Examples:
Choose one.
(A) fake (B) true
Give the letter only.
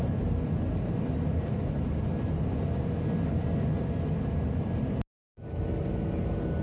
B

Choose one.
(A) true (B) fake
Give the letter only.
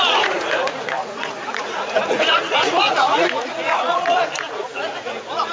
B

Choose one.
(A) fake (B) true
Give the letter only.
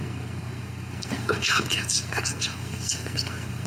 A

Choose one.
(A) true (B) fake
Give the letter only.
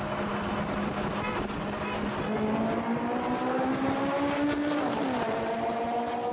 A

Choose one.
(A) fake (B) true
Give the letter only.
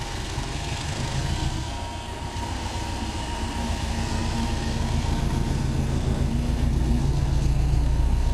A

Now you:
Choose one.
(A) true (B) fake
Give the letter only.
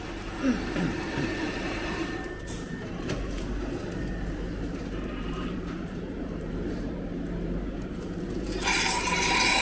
B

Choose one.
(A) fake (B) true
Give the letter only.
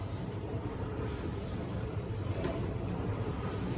A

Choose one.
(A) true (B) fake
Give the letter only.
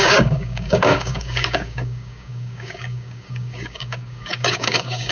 B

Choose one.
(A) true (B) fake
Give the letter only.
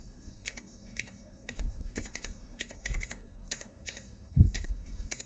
B